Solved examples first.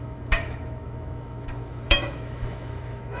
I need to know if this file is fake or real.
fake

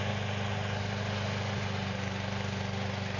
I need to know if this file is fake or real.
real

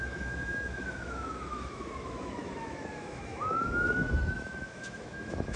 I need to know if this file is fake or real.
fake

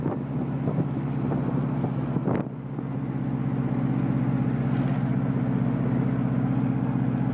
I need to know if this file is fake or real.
real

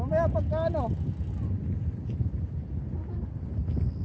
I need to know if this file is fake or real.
real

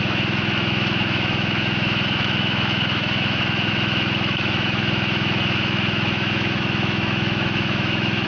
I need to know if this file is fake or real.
fake